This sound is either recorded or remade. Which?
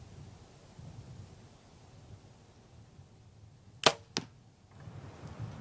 recorded